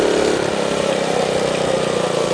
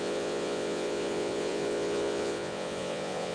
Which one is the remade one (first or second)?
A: second